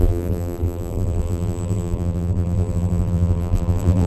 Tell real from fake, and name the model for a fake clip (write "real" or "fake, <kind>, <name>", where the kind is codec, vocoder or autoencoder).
fake, vocoder, BigVGAN v2